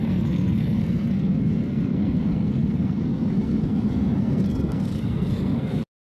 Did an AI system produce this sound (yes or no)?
yes